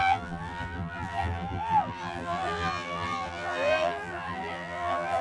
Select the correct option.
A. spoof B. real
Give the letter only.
A